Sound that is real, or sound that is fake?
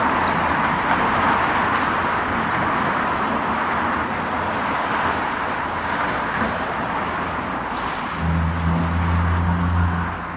real